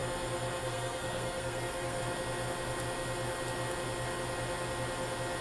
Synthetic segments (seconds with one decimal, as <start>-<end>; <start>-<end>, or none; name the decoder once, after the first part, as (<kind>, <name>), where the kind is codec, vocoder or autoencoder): 0.6-2.0 (codec, SNAC)